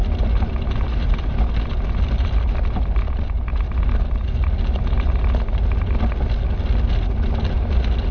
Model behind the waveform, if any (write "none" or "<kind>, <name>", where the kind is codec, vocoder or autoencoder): none